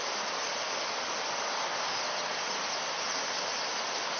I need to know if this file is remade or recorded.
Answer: recorded